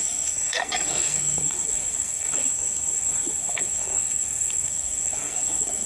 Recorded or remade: remade